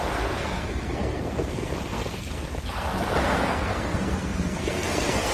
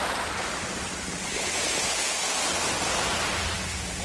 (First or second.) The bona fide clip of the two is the second